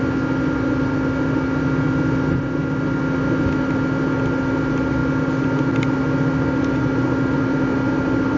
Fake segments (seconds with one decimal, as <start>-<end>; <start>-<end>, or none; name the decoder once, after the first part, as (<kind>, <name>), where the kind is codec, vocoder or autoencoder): none